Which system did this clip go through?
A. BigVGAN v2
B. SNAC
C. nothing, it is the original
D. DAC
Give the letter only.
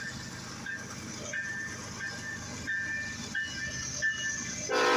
C